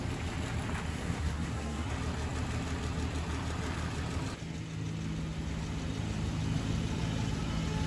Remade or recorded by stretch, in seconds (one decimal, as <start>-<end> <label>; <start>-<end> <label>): 0.0-0.9 recorded; 0.9-1.9 remade; 1.9-7.9 recorded